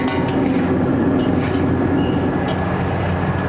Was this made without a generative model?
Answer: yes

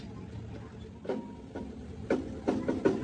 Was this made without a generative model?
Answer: yes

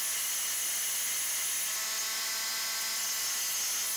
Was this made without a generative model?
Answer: yes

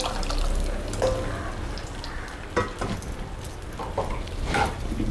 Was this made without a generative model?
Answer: yes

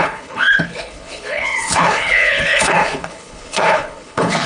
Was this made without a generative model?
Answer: no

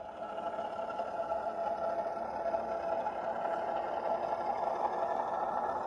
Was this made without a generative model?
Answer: yes